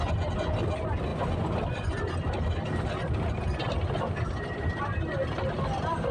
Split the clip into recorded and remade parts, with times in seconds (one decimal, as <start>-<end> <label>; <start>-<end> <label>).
0.0-6.1 recorded

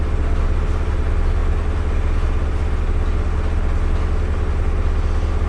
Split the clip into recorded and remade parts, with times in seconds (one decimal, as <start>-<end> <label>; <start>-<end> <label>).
0.0-5.5 recorded

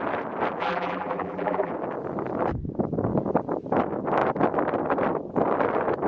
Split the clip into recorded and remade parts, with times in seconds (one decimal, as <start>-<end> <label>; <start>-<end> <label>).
0.0-0.6 recorded; 0.6-1.7 remade; 1.7-6.1 recorded